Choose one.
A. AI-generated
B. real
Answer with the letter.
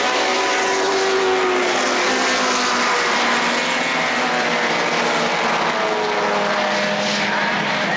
B